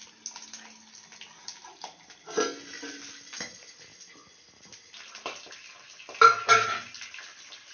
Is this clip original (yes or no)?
yes